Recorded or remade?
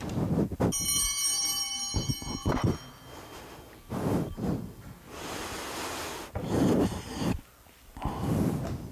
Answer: recorded